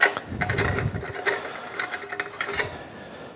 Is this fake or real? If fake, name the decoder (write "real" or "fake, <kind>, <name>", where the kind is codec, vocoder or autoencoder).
real